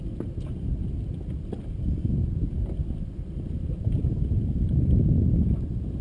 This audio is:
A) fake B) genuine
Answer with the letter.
B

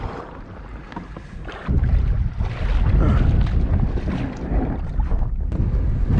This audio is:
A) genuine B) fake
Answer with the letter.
A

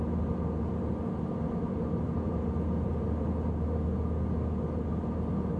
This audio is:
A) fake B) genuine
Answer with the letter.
B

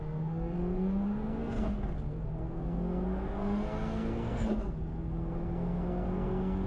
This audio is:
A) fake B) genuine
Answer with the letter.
A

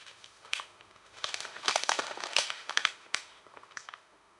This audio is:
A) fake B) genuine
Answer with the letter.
A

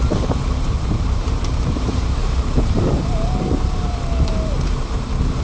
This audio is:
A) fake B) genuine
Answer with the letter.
A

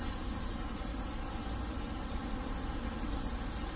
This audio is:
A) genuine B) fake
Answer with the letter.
A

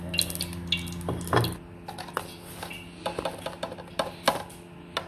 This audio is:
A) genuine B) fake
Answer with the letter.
A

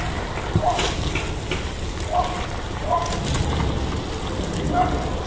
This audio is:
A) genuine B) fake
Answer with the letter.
A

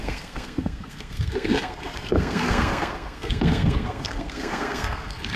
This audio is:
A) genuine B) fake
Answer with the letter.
B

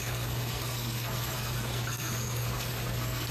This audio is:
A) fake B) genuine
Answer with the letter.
A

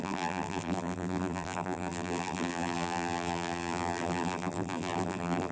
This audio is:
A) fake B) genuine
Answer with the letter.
A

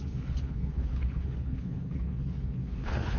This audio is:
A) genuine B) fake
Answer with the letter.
B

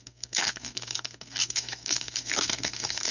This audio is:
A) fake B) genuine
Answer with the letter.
A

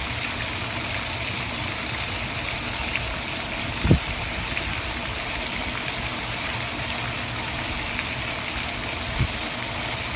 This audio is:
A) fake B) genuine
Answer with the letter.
B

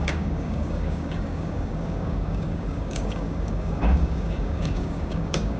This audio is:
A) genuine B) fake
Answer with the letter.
B